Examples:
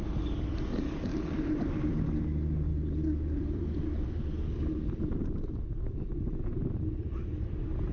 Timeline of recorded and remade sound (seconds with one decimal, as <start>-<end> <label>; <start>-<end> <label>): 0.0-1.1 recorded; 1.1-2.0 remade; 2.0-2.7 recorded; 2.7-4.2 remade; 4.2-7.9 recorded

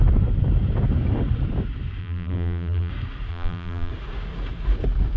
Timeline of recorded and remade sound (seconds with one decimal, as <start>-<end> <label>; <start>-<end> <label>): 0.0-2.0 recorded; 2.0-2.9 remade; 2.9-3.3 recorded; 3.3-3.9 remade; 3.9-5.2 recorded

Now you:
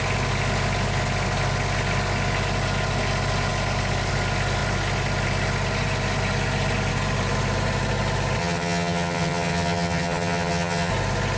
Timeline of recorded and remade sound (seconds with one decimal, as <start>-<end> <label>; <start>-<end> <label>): 0.0-8.4 recorded; 8.4-10.9 remade; 10.9-11.4 recorded

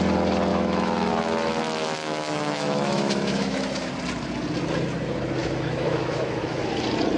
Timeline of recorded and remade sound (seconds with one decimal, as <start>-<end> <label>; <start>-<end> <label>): 0.0-0.5 recorded; 0.5-1.1 remade; 1.1-2.0 recorded; 2.0-3.9 remade; 3.9-5.4 recorded; 5.4-6.6 remade; 6.6-7.2 recorded

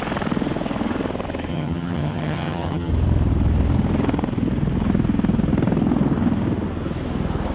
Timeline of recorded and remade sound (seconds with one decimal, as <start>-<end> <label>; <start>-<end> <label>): 0.0-1.5 recorded; 1.5-2.9 remade; 2.9-7.5 recorded

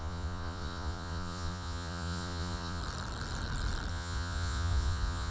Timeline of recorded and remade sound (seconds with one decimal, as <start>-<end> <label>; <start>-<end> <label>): 0.0-2.8 remade; 2.8-3.9 recorded; 3.9-5.3 remade